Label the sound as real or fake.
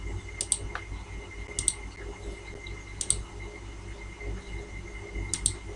real